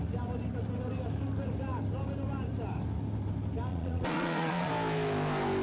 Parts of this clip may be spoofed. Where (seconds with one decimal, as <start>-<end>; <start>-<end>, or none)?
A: 3.7-4.7